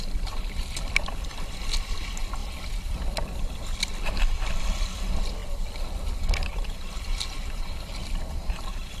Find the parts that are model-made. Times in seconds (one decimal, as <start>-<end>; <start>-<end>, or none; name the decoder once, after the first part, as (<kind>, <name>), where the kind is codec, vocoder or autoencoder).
0.0-2.4 (vocoder, BigVGAN v2); 4.6-5.4; 8.3-9.0